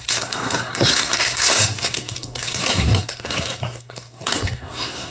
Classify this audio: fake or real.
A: fake